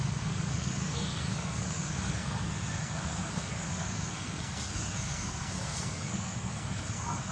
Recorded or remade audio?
remade